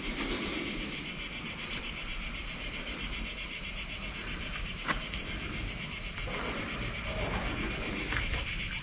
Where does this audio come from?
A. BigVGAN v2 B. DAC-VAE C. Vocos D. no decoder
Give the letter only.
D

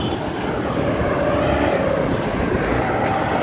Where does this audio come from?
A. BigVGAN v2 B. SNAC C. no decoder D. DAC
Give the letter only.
C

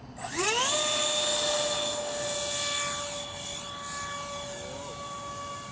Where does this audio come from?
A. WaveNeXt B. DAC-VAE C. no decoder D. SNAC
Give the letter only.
C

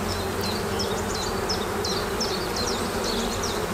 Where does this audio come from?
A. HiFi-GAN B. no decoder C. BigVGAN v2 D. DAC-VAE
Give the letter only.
B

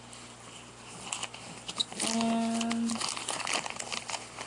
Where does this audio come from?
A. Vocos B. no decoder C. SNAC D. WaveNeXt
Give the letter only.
B